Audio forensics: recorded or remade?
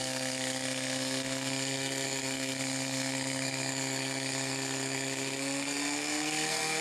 remade